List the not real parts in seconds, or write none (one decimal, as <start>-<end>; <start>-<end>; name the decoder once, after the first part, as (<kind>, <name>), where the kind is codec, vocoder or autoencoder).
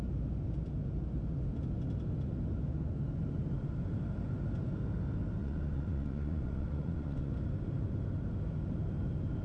5.4-7.3 (vocoder, Vocos)